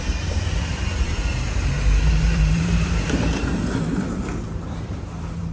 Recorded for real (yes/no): no